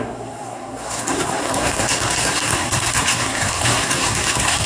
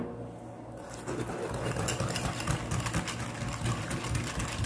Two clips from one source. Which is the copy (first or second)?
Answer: first